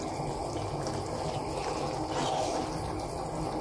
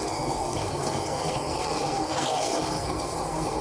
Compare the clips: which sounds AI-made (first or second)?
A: second